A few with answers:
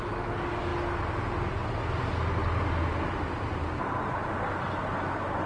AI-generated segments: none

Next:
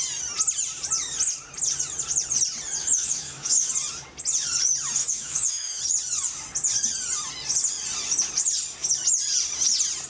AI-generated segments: 2.8-3.7; 5.0-5.8

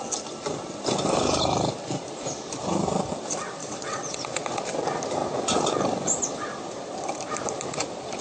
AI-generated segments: 3.6-4.4

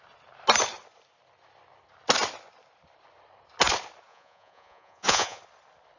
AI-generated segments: 4.1-5.4

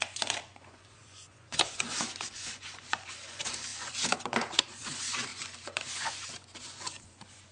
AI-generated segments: 0.0-7.5

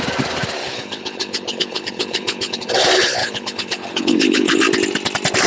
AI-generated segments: 0.6-2.7; 3.2-4.6

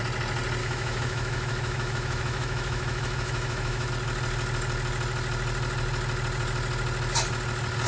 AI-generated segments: 0.6-3.9